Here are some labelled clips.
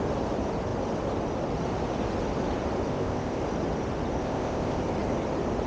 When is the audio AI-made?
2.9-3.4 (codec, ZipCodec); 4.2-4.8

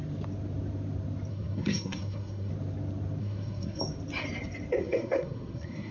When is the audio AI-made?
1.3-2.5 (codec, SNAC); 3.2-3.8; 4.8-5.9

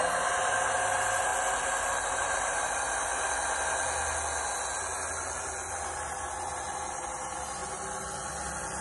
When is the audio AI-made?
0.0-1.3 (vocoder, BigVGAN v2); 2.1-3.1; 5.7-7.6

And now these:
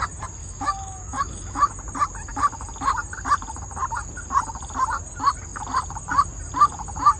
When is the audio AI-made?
0.4-1.7 (autoencoder, DAC-VAE)